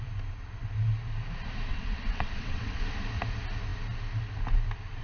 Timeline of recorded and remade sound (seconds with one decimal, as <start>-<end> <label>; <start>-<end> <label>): 0.0-1.7 recorded; 1.7-2.8 remade; 2.8-5.0 recorded